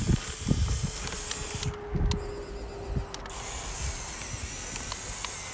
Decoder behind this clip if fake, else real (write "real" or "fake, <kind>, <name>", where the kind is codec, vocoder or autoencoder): real